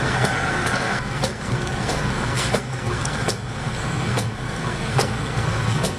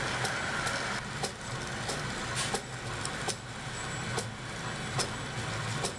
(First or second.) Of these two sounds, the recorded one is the second